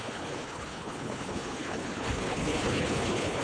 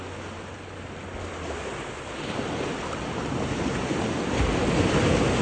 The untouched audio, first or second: second